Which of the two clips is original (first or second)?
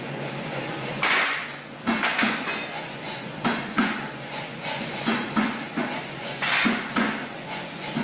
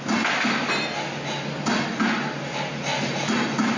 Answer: second